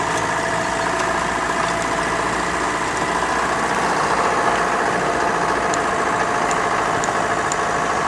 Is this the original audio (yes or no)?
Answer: yes